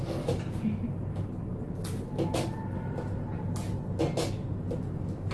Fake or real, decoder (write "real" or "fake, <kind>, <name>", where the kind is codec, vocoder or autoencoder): real